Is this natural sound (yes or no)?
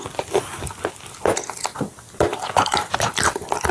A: yes